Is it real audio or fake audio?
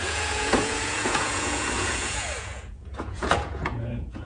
fake